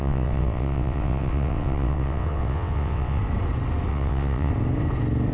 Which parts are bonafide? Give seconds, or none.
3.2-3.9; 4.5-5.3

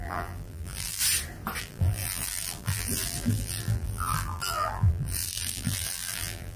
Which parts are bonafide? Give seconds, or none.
1.0-1.6

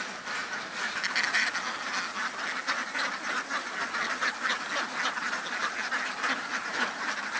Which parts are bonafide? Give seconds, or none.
0.0-7.4

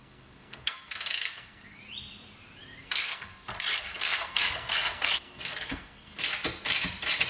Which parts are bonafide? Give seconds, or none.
1.8-2.8; 3.3-3.8; 6.1-7.3

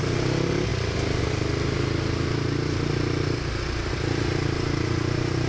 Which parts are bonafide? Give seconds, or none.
0.0-5.5

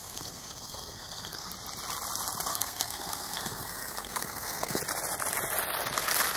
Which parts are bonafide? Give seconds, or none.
1.5-2.5; 4.8-6.4

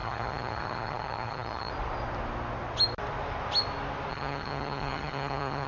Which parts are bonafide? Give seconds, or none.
1.7-4.1

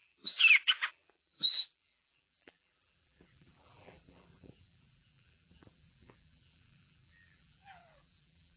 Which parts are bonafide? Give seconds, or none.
none